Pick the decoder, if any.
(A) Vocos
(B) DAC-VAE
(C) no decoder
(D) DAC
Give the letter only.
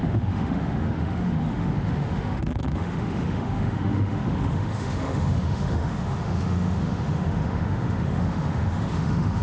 B